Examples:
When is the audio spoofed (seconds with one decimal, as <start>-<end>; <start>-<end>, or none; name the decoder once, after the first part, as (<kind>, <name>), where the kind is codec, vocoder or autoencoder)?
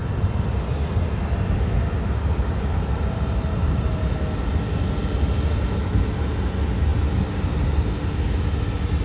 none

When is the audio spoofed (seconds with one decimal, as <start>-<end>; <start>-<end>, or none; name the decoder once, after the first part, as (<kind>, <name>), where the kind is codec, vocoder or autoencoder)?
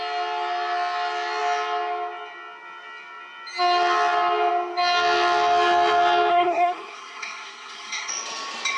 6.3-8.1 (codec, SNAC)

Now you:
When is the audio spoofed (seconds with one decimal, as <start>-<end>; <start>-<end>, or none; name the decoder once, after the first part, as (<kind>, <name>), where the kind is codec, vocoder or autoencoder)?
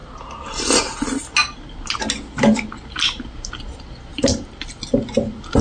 none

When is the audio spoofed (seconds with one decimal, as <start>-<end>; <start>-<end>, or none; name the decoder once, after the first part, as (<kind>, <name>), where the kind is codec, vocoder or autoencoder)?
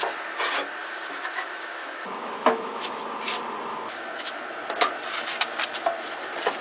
0.8-3.0 (autoencoder, DAC-VAE); 3.7-4.4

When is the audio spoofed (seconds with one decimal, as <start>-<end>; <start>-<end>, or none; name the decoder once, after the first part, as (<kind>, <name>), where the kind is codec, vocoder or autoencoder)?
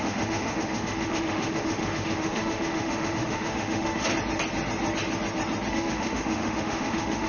0.0-4.1 (autoencoder, DAC-VAE); 5.7-7.3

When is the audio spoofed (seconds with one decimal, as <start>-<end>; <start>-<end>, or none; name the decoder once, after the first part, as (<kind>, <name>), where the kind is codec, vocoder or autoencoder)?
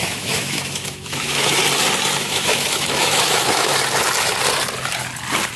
0.0-1.6 (autoencoder, DAC-VAE); 2.2-3.7